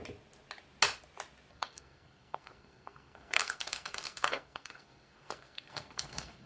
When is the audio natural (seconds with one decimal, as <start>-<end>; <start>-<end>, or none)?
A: 0.0-1.5